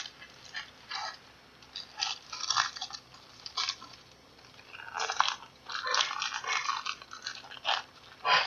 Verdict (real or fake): real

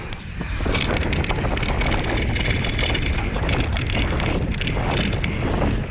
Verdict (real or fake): real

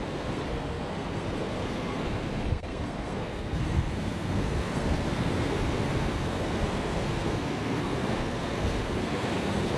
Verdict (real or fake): fake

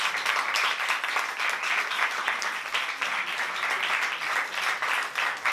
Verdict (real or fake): real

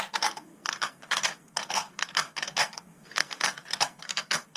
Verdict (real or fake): fake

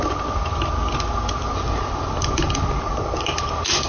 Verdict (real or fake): real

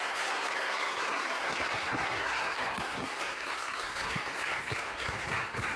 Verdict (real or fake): fake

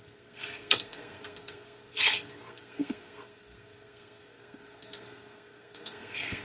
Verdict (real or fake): fake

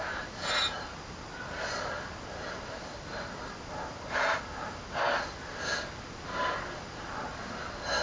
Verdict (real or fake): real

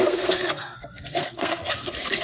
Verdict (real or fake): fake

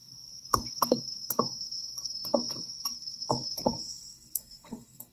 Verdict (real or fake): fake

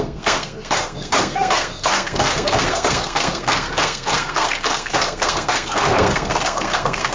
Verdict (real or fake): fake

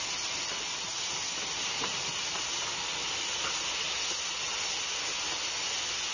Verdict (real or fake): real